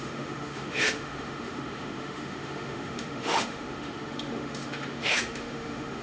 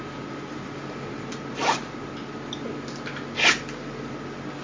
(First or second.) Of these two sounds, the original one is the second